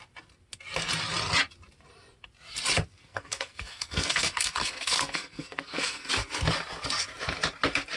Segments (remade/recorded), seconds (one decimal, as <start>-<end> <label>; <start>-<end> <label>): 0.0-3.1 recorded; 3.1-6.1 remade; 6.1-8.0 recorded